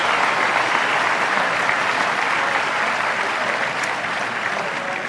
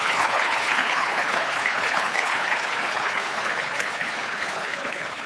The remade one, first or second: second